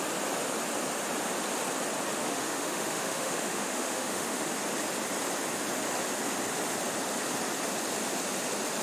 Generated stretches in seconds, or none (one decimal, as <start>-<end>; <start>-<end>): 2.2-4.5